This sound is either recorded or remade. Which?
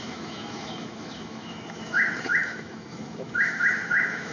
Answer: remade